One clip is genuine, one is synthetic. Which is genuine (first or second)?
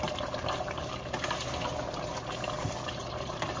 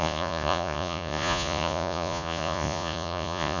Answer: first